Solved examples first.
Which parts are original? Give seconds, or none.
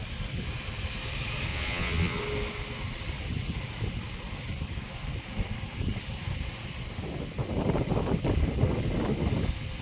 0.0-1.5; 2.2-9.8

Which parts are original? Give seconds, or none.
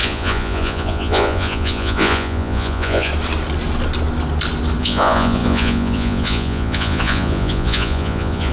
3.1-4.8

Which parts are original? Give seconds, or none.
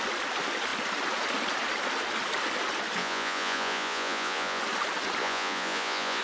0.0-3.0; 4.6-5.2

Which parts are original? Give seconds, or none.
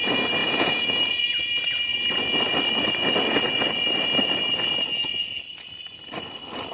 0.0-0.4; 1.2-6.7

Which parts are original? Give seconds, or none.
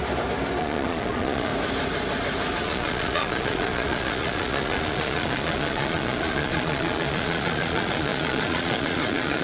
0.0-0.6; 1.5-2.6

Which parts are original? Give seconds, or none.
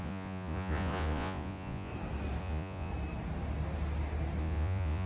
1.9-2.4; 2.9-4.4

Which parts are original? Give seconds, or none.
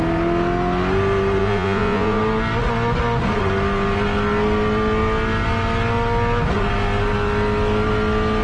0.0-1.4; 2.2-8.4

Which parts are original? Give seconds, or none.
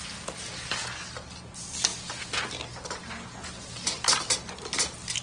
0.0-5.2